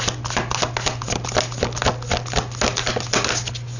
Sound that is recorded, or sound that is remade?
recorded